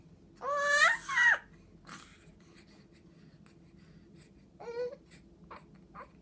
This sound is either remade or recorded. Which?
recorded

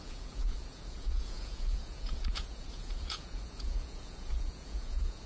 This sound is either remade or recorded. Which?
remade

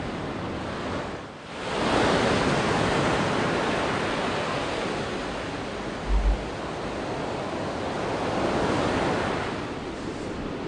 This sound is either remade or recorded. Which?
recorded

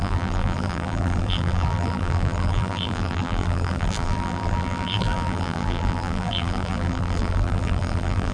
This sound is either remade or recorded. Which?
remade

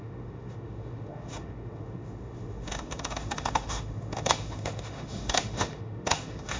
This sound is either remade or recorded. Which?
remade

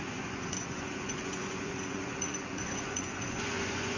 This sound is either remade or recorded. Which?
remade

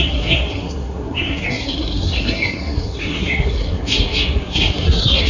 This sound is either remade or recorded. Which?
remade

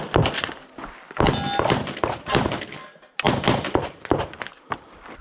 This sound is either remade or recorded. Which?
recorded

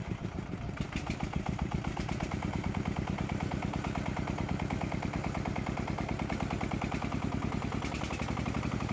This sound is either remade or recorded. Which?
remade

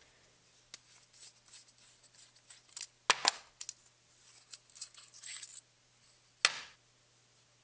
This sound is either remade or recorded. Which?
recorded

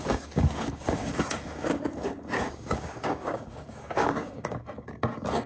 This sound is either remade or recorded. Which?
remade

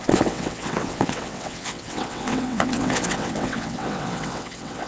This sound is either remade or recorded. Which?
remade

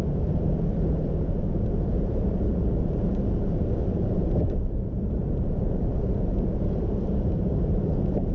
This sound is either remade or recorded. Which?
remade